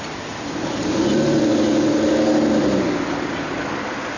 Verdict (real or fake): real